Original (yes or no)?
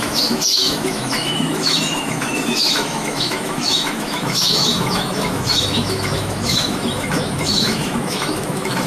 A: no